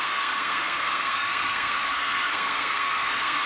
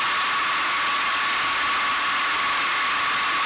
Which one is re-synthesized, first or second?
first